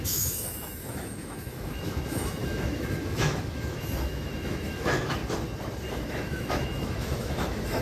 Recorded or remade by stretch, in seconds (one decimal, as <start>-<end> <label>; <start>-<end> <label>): 0.0-5.2 remade; 5.2-5.9 recorded; 5.9-7.8 remade